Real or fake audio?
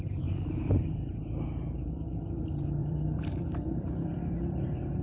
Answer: fake